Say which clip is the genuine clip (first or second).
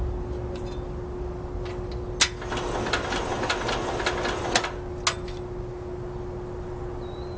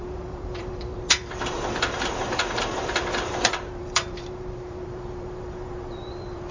first